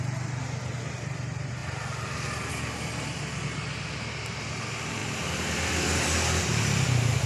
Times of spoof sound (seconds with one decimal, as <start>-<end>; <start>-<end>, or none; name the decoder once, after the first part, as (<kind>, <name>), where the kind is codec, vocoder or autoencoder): none